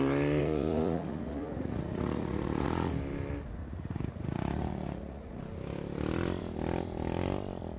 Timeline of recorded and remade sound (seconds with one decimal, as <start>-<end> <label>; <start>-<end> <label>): 0.0-0.4 recorded; 0.4-2.9 remade; 2.9-3.6 recorded; 3.6-5.4 remade; 5.4-7.8 recorded